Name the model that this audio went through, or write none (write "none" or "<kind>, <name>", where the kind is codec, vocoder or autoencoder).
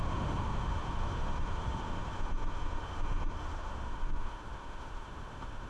autoencoder, DAC-VAE